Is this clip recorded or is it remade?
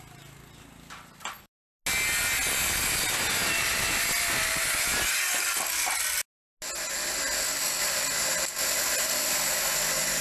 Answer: recorded